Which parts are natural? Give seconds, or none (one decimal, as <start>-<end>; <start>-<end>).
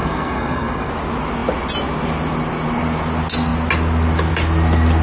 0.9-5.0